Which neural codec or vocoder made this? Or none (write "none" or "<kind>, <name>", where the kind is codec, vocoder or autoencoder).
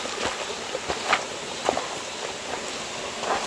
none